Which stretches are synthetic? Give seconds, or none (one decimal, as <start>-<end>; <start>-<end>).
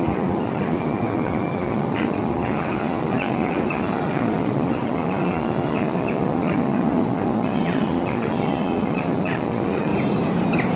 0.0-9.9